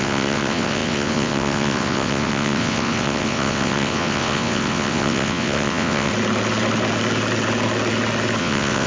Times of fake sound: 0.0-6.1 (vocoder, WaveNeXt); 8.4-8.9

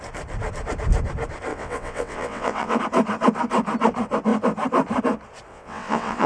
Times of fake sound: 1.5-2.8 (vocoder, WaveNeXt); 5.5-6.3

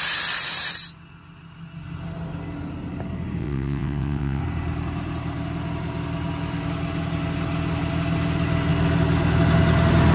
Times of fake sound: 3.4-4.4 (vocoder, WaveNeXt)

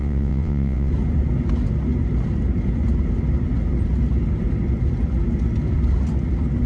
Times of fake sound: 0.0-0.9 (vocoder, WaveNeXt)

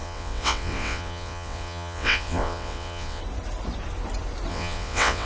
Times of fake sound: 0.0-3.2 (vocoder, WaveNeXt); 4.5-5.3

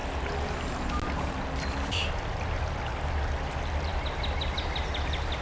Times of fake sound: none

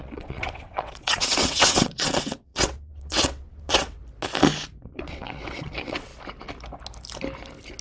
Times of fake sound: 0.0-4.0 (vocoder, WaveNeXt); 4.8-6.1